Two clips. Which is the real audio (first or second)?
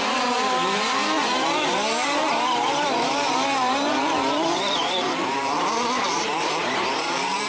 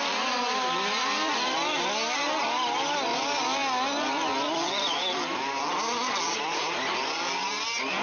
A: second